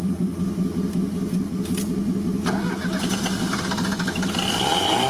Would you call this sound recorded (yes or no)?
yes